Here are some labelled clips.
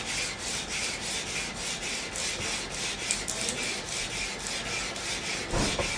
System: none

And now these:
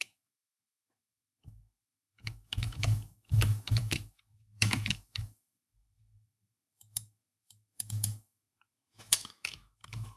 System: autoencoder, DAC-VAE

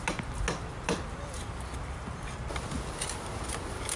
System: none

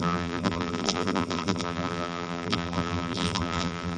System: vocoder, BigVGAN v2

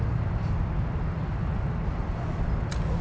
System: none